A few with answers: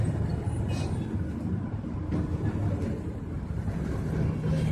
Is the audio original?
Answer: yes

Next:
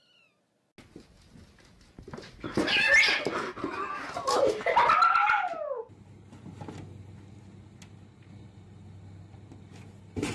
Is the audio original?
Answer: yes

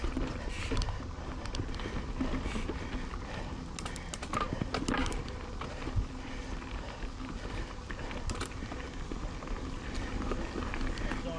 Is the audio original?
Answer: yes